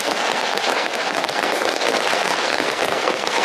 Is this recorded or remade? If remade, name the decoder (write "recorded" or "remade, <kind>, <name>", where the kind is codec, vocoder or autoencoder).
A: remade, codec, SNAC